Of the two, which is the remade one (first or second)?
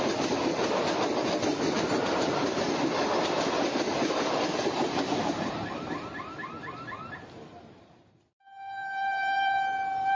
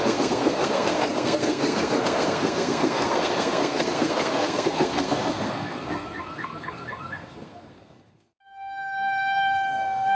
second